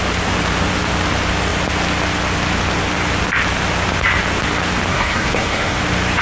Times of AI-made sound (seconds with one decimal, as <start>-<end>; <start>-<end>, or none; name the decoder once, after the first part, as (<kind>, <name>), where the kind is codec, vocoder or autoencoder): 4.9-5.8 (codec, SNAC)